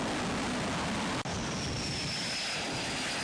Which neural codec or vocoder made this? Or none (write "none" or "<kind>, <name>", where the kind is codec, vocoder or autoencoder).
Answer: none